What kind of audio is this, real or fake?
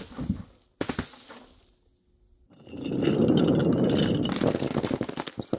real